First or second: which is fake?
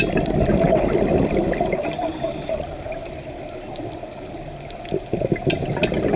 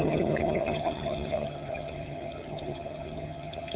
second